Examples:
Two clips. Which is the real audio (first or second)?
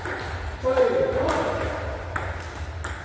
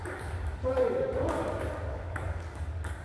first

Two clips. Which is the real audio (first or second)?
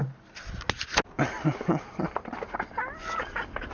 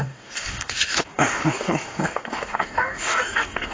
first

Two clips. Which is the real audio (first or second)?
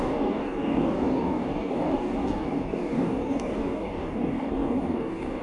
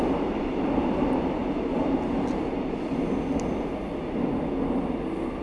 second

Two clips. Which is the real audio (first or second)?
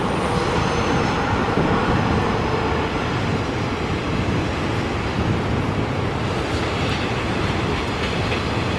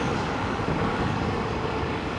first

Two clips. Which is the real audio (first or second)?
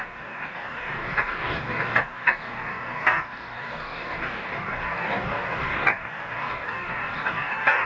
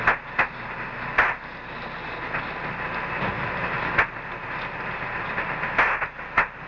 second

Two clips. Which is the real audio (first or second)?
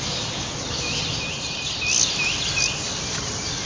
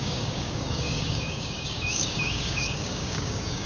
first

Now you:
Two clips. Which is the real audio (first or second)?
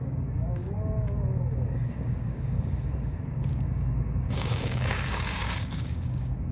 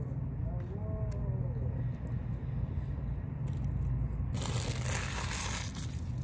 second